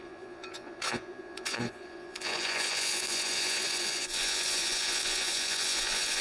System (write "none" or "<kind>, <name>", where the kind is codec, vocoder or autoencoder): vocoder, Vocos